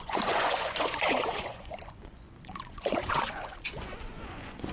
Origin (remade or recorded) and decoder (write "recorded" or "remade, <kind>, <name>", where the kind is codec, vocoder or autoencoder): remade, vocoder, Vocos